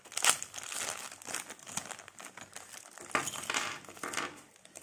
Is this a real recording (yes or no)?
yes